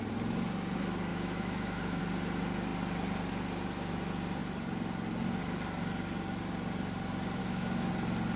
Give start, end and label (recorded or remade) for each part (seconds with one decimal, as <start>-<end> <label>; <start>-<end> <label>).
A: 0.0-1.1 recorded; 1.1-2.0 remade; 2.0-7.4 recorded; 7.4-7.9 remade; 7.9-8.4 recorded